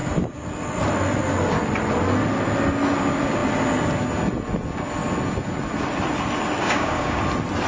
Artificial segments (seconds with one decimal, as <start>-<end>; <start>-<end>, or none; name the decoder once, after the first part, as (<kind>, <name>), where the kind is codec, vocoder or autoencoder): 6.6-7.2 (codec, DAC)